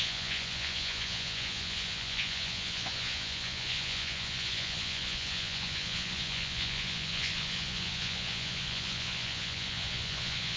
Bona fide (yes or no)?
no